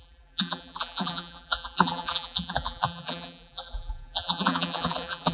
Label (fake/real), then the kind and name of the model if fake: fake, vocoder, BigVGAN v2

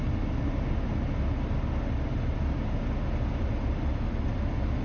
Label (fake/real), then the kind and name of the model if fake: real